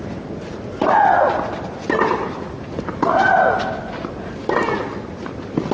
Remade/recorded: recorded